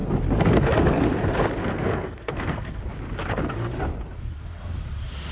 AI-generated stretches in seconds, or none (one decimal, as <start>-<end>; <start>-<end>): 1.6-2.8